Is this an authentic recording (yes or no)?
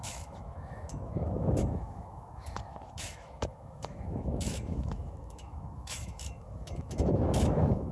no